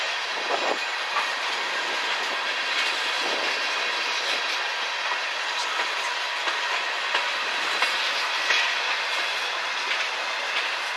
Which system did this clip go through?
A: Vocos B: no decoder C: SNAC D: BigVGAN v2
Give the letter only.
B